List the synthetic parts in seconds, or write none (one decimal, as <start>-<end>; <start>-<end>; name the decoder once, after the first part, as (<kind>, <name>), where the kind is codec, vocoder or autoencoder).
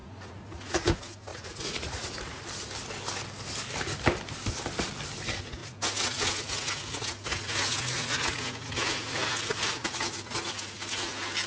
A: 0.0-0.9 (vocoder, Vocos); 1.3-2.4